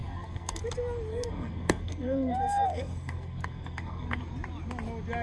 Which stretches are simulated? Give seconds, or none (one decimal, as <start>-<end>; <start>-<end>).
0.0-0.6; 1.1-4.2

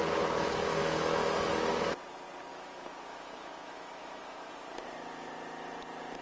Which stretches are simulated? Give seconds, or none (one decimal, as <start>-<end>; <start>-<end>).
0.8-1.7; 2.5-4.5

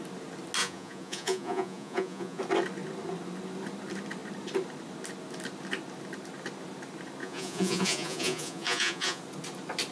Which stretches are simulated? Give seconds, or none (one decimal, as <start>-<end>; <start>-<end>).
0.6-2.4; 7.2-9.2

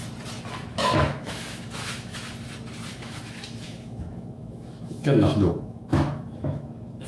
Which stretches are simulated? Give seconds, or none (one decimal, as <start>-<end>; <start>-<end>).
0.7-2.3; 2.9-7.1